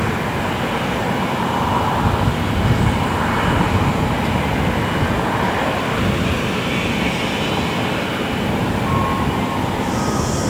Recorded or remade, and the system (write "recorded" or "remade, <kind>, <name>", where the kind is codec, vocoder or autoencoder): recorded